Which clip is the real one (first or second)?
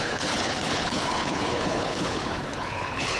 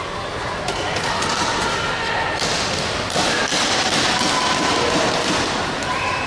second